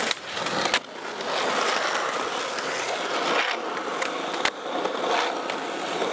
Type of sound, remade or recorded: recorded